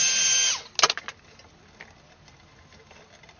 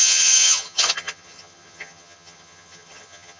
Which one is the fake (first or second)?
second